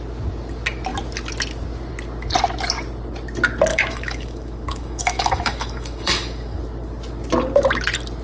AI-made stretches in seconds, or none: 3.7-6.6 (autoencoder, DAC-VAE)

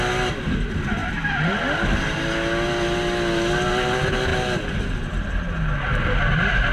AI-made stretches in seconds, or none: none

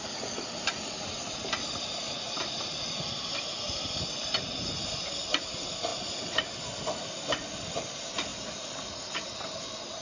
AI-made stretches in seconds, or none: none

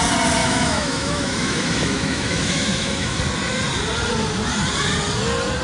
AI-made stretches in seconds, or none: 0.4-3.2 (autoencoder, DAC-VAE)